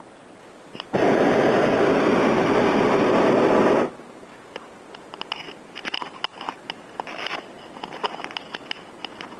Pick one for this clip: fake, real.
real